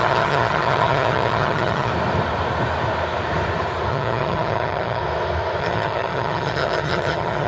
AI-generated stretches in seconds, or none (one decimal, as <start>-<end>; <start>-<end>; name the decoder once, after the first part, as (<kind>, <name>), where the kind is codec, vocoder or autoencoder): 0.0-1.9 (vocoder, HiFi-GAN); 3.9-5.0; 5.6-7.5